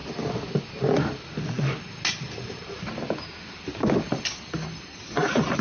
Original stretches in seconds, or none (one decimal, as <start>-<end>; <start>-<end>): 0.0-5.6